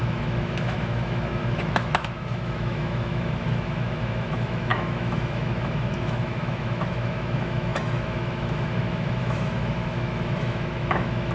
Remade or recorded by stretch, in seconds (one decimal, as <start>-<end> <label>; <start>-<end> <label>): 0.0-11.3 remade